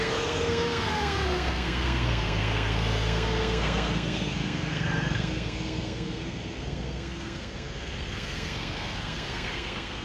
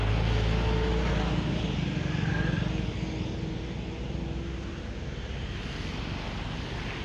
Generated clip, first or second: first